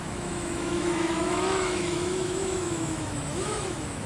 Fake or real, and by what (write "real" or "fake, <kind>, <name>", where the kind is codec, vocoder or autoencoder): fake, autoencoder, DAC-VAE